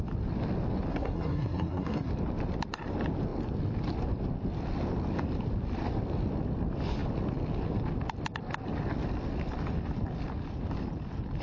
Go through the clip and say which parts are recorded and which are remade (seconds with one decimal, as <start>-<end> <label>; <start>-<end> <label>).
0.0-0.9 recorded; 0.9-2.1 remade; 2.1-11.4 recorded